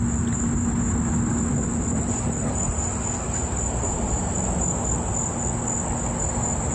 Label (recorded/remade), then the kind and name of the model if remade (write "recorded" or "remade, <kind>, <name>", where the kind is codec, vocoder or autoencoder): recorded